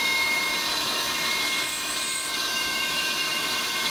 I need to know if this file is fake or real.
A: fake